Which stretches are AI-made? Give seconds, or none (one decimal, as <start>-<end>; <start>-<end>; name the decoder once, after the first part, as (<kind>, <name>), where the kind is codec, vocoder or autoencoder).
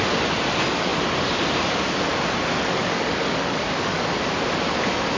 2.8-4.0 (codec, DAC)